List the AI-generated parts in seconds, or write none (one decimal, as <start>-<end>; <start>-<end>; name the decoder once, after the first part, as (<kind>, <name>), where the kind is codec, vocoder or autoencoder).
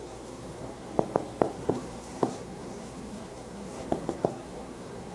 0.0-0.9 (codec, SNAC); 1.5-5.1